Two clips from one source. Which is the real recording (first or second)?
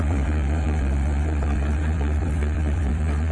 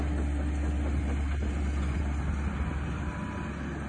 second